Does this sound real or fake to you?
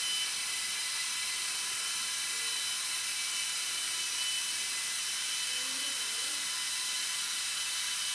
real